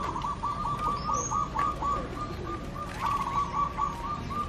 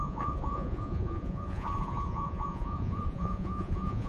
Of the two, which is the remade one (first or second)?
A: second